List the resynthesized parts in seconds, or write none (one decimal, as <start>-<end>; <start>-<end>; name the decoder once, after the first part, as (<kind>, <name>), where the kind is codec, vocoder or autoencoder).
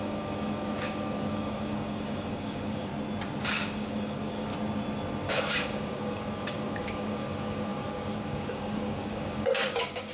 0.0-2.9 (codec, DAC); 3.4-4.5; 5.3-10.1